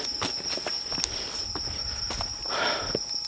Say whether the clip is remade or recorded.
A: recorded